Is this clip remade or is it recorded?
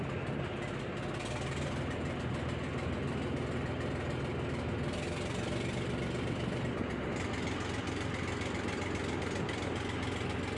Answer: recorded